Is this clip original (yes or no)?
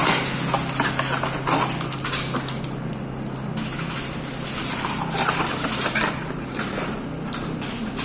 yes